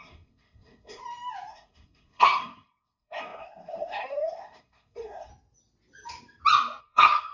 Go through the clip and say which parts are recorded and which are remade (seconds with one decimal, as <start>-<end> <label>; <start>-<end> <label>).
0.0-1.0 remade; 1.0-1.5 recorded; 1.5-5.3 remade; 5.3-6.8 recorded; 6.8-7.3 remade